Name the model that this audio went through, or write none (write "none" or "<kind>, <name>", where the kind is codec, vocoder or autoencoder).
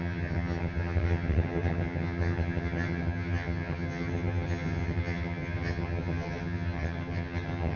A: vocoder, HiFi-GAN